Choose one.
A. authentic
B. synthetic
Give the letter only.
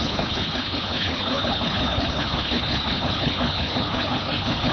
B